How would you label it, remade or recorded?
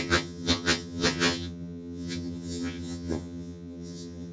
remade